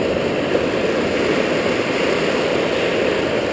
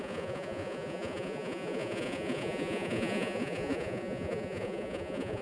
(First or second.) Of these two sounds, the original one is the first